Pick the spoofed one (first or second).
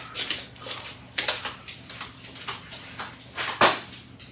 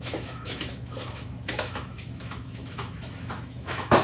second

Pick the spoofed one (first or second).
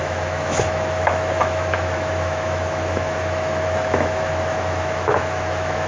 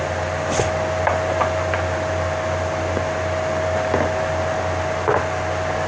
first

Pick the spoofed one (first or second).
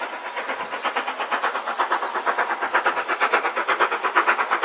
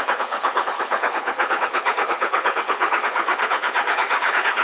second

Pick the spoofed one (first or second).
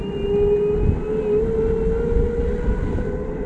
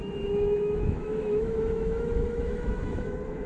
second